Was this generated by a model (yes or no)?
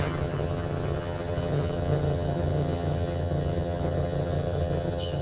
yes